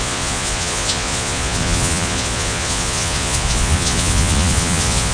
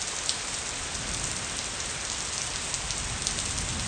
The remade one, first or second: first